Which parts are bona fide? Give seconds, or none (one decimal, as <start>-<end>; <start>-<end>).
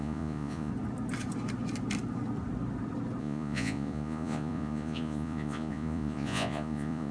0.7-3.2